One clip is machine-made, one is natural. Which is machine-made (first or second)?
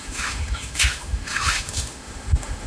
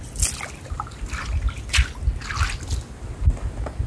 first